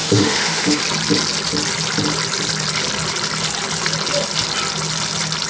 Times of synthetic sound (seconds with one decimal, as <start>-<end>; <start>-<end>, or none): 0.0-0.8